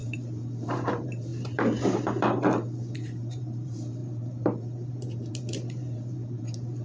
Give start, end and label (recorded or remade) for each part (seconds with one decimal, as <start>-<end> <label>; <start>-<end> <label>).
0.0-6.8 remade